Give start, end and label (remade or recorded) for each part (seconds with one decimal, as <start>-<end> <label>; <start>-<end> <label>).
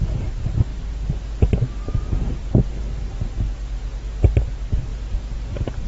0.0-0.7 remade; 0.7-4.2 recorded; 4.2-4.9 remade; 4.9-5.9 recorded